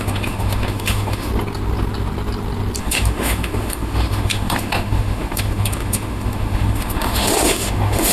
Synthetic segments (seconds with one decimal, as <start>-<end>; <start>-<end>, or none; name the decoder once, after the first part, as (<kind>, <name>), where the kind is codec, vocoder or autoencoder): 0.0-1.3 (autoencoder, DAC-VAE); 2.8-8.1